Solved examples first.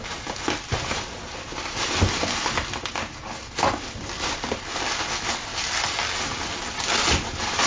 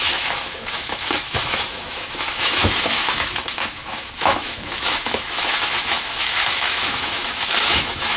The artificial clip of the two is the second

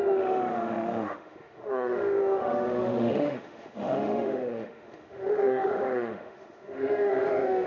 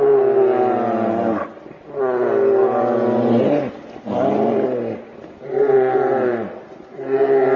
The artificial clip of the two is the first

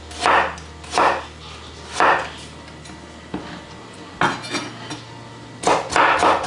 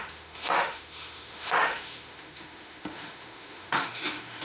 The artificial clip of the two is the second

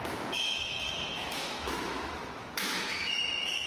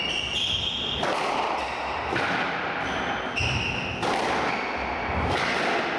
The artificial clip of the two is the first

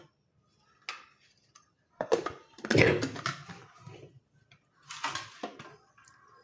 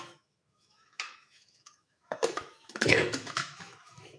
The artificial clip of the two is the second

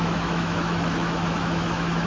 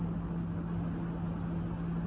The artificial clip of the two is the first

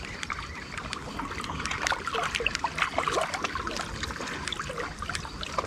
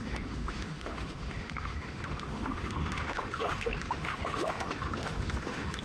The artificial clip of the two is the second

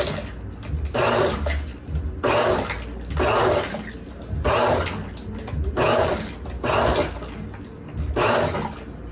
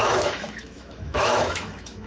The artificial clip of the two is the second